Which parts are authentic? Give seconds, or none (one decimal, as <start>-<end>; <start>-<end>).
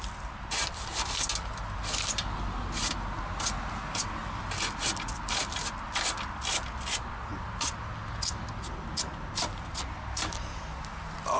0.0-11.4